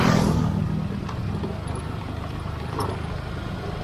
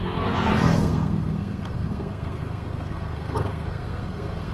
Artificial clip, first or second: second